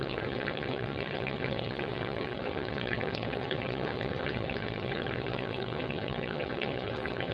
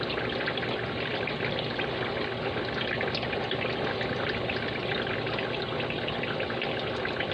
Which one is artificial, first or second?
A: first